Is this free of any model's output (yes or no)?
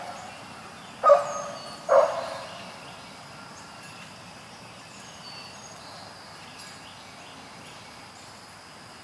yes